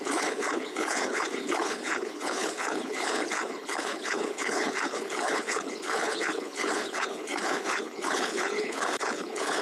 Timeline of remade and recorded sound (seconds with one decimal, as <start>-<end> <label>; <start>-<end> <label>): 0.0-9.6 remade